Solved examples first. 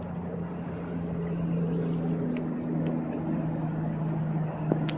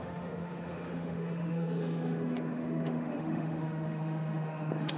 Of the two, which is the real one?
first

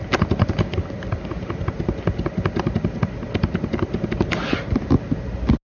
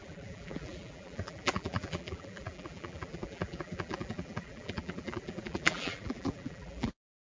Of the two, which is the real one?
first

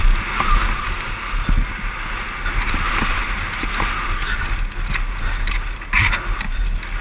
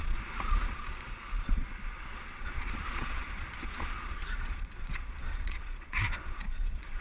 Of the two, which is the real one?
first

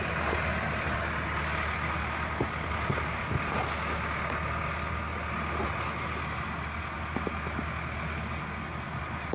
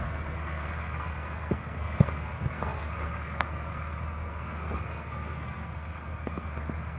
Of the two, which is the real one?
first